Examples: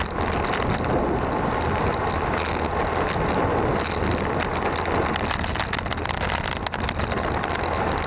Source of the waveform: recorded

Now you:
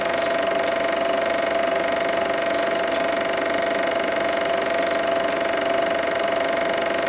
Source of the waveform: recorded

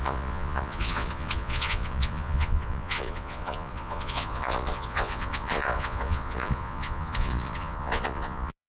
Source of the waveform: remade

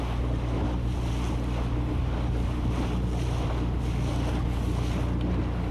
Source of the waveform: recorded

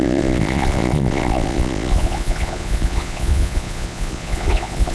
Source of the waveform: remade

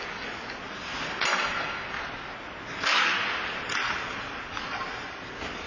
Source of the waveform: recorded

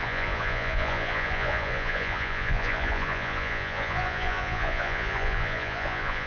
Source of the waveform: remade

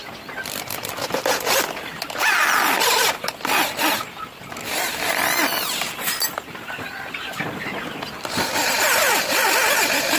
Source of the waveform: recorded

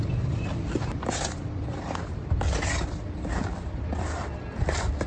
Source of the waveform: recorded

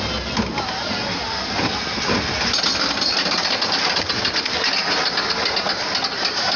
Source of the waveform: recorded